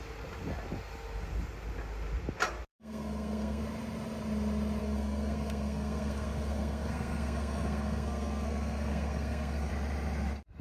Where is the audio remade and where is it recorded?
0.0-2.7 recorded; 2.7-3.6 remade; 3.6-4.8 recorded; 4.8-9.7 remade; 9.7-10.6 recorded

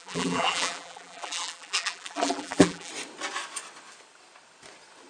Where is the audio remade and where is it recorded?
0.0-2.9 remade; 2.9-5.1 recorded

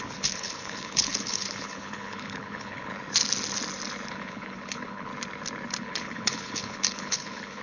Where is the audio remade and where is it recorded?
0.0-2.9 remade; 2.9-4.1 recorded; 4.1-5.1 remade; 5.1-5.8 recorded; 5.8-7.6 remade

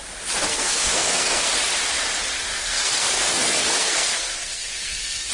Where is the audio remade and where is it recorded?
0.0-0.5 recorded; 0.5-1.5 remade; 1.5-2.5 recorded; 2.5-5.3 remade

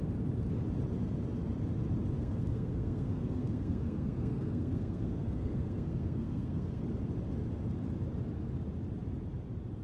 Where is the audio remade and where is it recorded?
0.0-2.2 recorded; 2.2-6.8 remade; 6.8-9.8 recorded

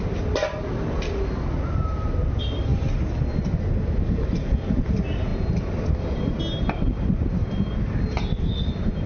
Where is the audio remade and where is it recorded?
0.0-9.1 recorded

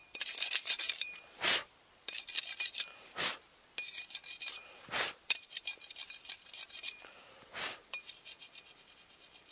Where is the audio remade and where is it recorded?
0.0-2.2 remade; 2.2-4.0 recorded; 4.0-8.1 remade; 8.1-9.5 recorded

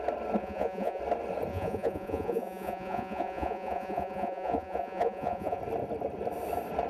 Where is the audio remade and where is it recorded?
0.0-0.4 recorded; 0.4-1.0 remade; 1.0-1.5 recorded; 1.5-5.6 remade; 5.6-6.9 recorded